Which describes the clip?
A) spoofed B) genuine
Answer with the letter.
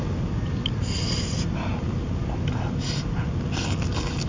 B